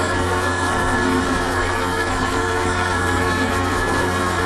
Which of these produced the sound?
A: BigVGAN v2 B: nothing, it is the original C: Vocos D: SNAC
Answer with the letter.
D